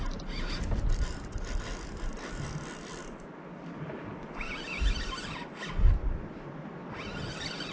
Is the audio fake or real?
real